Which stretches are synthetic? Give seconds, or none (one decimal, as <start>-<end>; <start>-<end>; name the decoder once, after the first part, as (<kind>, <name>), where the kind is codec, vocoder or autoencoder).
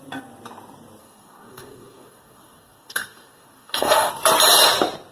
1.0-4.1 (codec, DAC)